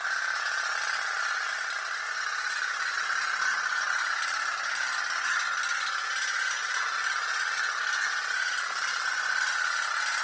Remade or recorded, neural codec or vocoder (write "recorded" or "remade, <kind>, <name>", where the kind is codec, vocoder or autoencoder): recorded